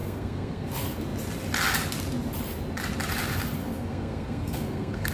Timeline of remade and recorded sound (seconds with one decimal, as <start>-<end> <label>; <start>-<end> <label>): 0.0-0.7 remade; 0.7-3.6 recorded; 3.6-5.1 remade